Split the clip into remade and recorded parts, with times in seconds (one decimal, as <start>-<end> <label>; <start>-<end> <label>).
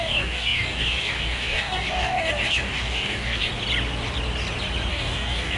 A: 0.0-3.5 remade; 3.5-4.9 recorded; 4.9-5.6 remade